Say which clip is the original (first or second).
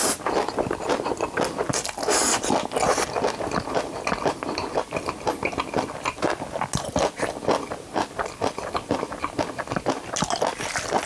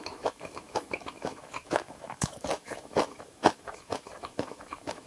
first